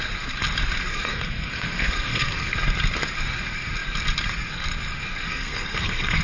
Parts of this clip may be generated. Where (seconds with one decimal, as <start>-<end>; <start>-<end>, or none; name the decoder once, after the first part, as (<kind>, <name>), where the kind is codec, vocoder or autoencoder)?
0.9-2.5 (codec, SNAC); 5.3-6.2